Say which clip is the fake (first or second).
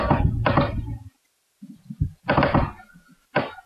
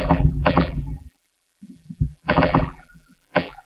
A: second